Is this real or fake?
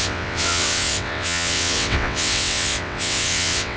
fake